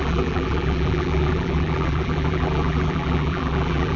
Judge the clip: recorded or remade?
remade